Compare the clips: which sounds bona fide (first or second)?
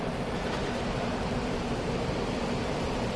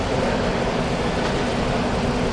second